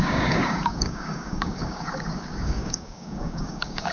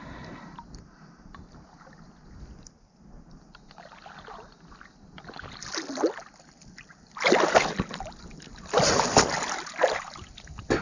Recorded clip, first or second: second